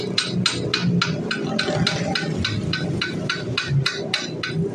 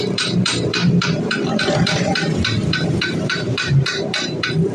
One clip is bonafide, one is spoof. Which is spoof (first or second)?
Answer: second